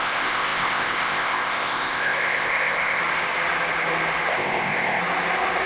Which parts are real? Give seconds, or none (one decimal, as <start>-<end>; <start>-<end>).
3.0-4.3; 5.0-5.7